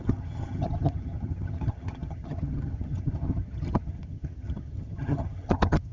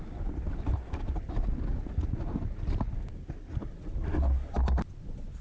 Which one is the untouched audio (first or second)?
second